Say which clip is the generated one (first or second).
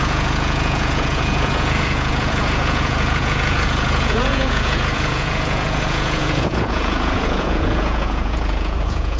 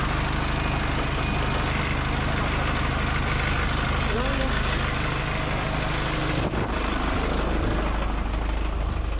first